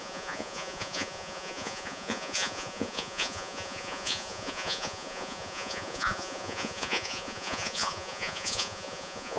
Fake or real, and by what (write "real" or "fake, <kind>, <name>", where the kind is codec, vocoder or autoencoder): fake, vocoder, Vocos